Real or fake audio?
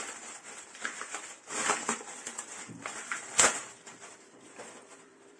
fake